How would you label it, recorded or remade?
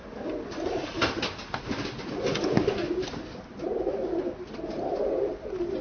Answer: recorded